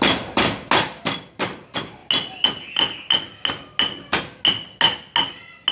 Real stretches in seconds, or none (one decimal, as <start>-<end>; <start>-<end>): 0.0-5.7